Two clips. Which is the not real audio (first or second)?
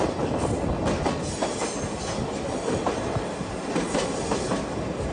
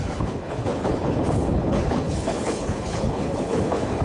second